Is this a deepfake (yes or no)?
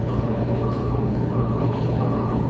yes